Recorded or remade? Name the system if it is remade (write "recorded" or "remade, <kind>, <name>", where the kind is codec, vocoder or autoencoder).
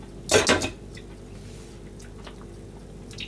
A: recorded